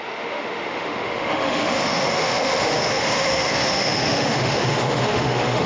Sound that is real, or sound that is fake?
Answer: fake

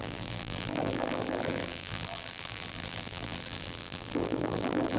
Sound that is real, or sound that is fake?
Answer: fake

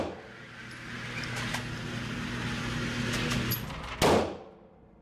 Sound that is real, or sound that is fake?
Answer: real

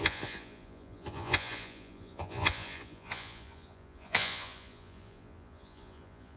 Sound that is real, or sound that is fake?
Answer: fake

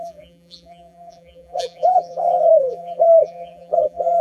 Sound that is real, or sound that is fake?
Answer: fake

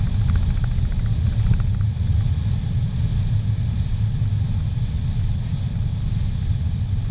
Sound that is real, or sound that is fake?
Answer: real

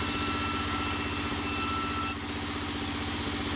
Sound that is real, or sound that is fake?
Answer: real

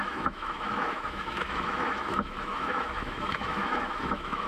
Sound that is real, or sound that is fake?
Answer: fake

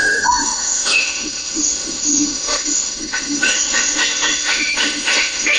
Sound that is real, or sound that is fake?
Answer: fake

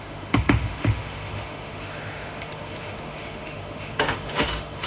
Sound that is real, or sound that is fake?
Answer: fake